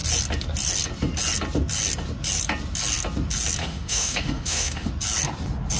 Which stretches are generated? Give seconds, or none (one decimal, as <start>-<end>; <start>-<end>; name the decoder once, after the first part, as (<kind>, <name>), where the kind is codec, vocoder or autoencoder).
3.6-4.9 (autoencoder, DAC-VAE)